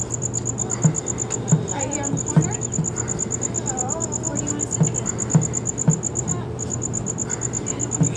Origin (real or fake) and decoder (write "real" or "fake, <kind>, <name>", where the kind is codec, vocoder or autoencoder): real